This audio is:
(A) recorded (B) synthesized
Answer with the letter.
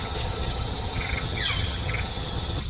B